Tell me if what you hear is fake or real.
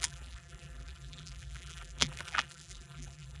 fake